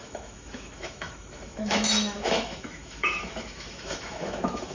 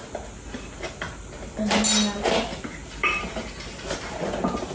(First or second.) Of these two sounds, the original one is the second